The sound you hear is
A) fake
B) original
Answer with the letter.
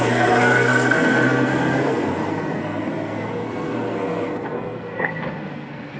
A